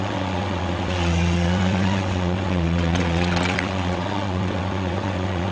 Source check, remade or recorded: remade